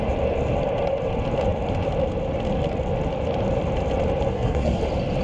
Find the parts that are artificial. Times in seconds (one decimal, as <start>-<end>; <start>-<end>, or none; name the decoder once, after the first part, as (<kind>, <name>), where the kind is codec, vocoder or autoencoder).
4.3-4.8 (codec, SNAC)